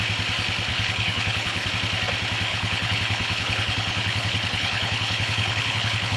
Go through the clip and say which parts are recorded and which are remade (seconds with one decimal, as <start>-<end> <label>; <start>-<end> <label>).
0.0-0.7 recorded; 0.7-1.7 remade; 1.7-2.5 recorded; 2.5-6.2 remade